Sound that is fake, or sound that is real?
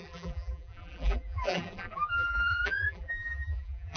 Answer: fake